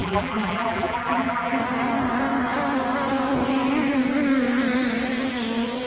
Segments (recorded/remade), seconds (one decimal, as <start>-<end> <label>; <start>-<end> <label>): 0.0-1.6 remade; 1.6-5.9 recorded